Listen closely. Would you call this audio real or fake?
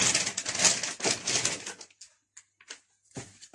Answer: real